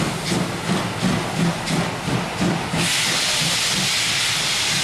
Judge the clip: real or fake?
real